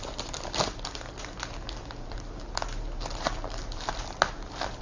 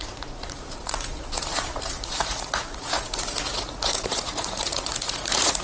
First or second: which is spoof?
second